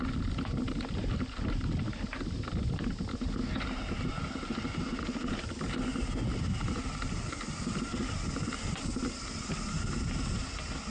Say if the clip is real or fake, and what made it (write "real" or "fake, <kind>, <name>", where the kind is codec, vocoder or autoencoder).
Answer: real